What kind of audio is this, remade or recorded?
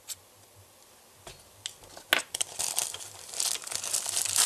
recorded